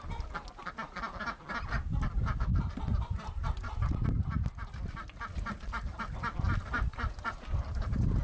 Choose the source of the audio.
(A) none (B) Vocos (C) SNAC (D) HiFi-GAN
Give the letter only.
A